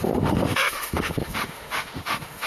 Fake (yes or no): yes